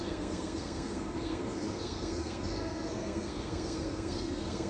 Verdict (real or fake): fake